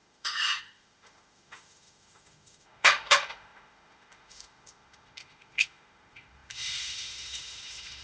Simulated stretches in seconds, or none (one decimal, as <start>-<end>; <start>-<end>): 0.0-8.0

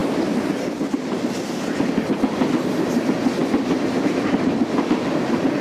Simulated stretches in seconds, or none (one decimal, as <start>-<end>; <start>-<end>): none

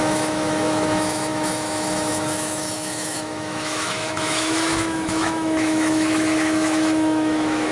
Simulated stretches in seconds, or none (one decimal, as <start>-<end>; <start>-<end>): 0.0-7.7

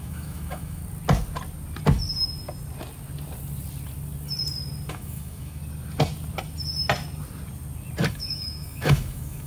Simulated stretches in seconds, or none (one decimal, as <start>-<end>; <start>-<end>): 0.0-0.8; 4.9-5.6; 8.1-9.5

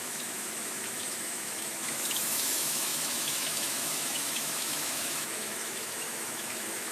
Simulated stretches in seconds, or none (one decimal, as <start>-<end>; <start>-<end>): 0.0-6.9

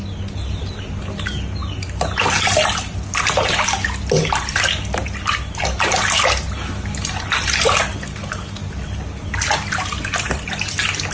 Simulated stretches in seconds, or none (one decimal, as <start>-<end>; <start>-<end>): none